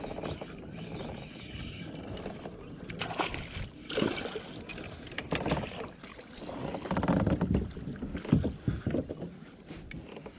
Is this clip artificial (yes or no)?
no